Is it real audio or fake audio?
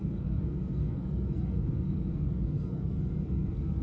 fake